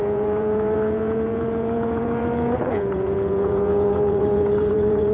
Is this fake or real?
fake